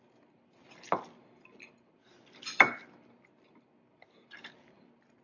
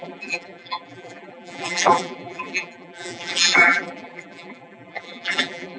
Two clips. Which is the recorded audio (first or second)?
first